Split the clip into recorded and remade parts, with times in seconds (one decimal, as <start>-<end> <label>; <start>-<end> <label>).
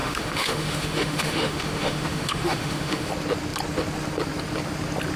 0.0-3.1 remade; 3.1-5.2 recorded